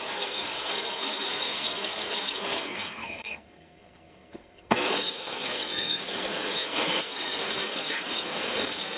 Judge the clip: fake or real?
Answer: fake